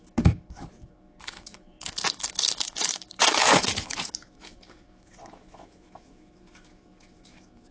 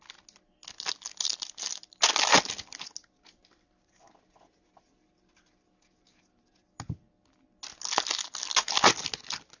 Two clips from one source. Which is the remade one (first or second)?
first